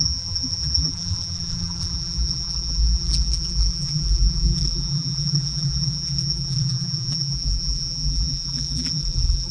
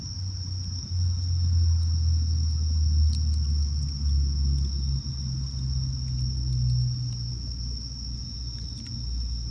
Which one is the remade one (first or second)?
first